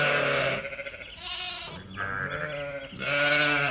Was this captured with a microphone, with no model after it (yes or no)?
yes